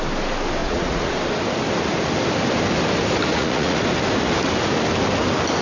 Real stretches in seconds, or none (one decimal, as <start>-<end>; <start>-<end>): 0.0-0.6; 1.1-3.3; 3.8-5.6